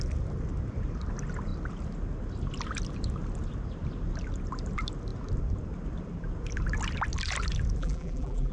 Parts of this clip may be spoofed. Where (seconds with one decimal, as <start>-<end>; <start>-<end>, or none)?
7.8-8.5